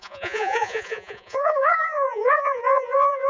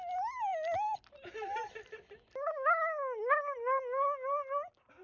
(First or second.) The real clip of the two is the second